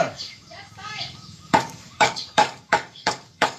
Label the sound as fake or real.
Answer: fake